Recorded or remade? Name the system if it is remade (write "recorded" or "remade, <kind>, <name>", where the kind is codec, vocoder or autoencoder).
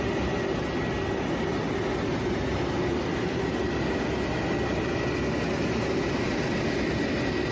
recorded